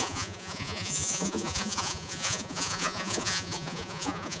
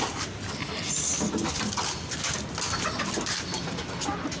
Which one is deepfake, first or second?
first